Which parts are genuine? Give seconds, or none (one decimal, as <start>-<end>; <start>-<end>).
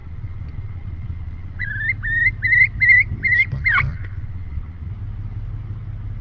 1.7-3.9; 4.9-6.2